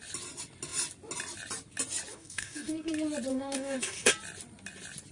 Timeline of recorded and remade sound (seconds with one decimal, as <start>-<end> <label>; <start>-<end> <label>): 0.0-2.1 recorded; 2.1-2.9 remade; 2.9-3.3 recorded; 3.3-4.1 remade; 4.1-5.1 recorded